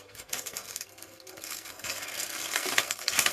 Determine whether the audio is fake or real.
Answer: fake